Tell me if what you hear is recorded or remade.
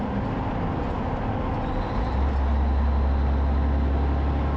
recorded